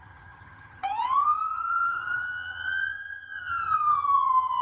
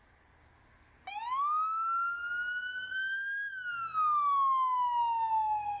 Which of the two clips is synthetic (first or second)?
first